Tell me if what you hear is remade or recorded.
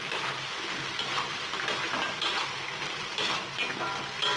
recorded